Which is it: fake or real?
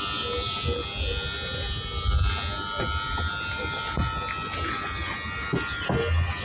real